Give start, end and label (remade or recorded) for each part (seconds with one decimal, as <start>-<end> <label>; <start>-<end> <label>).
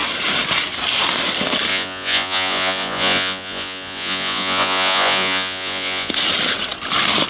0.0-1.7 recorded; 1.7-6.1 remade; 6.1-7.3 recorded